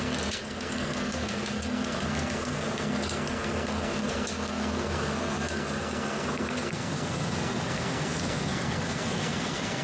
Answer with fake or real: fake